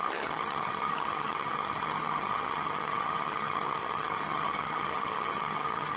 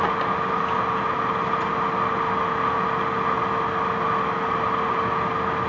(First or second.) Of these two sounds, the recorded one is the second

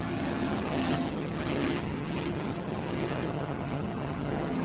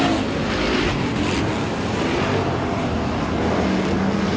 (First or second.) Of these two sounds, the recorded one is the second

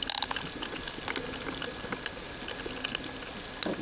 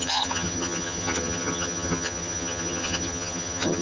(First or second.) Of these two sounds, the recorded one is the first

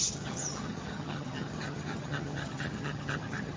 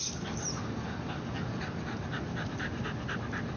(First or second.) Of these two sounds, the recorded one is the second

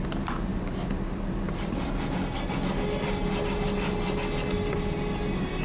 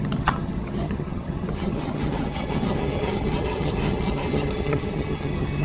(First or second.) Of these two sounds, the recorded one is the first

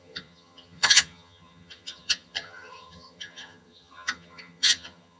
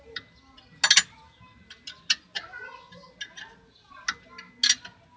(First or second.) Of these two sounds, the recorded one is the second